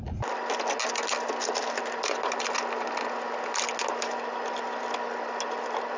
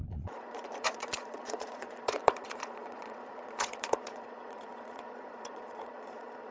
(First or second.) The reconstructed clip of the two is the second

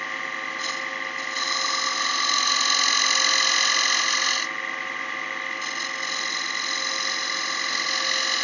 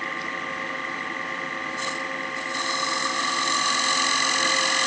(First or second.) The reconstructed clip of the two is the second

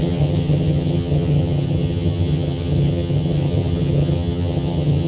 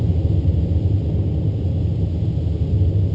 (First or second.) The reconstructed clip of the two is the first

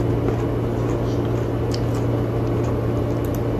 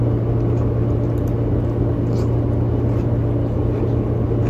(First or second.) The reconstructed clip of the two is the second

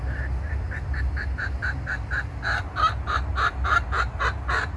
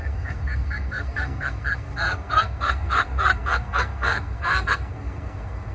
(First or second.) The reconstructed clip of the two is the second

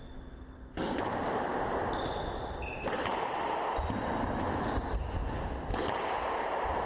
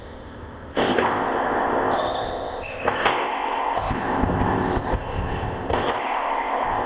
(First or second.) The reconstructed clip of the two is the second